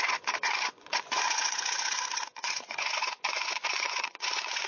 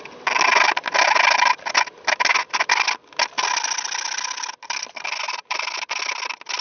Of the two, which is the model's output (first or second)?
first